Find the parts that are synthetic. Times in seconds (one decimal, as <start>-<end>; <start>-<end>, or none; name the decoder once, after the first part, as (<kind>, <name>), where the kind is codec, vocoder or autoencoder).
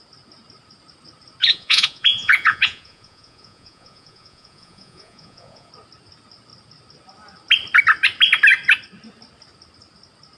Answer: 1.4-5.7 (vocoder, Vocos)